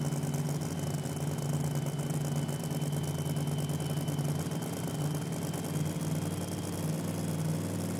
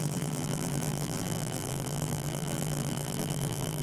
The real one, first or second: first